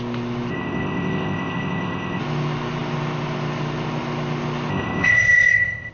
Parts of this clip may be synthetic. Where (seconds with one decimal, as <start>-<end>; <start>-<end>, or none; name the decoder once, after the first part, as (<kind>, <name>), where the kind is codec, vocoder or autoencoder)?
0.5-2.2 (codec, ZipCodec); 4.7-5.9